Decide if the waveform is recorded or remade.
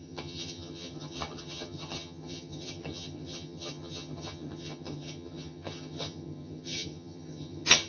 remade